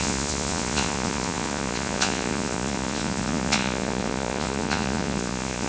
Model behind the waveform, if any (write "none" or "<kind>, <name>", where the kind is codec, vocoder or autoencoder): vocoder, Vocos